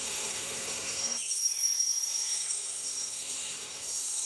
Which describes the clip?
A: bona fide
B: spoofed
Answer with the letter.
B